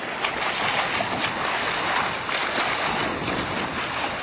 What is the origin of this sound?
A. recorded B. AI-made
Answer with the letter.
A